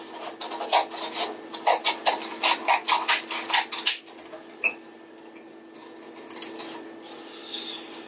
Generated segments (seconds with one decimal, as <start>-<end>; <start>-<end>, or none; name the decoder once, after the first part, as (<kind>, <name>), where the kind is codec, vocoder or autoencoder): none